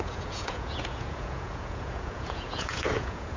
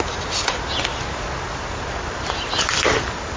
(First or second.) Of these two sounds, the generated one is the first